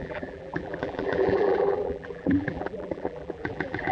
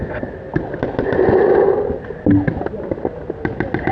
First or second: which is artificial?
first